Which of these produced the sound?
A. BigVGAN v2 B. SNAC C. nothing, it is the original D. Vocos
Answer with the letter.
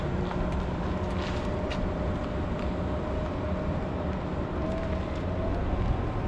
C